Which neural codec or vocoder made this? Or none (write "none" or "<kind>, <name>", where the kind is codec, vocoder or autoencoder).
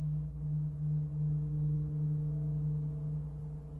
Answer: none